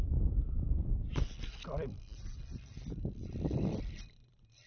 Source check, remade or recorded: remade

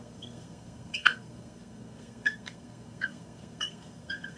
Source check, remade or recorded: remade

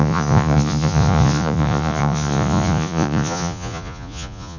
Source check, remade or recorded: remade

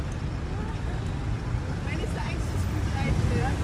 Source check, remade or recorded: recorded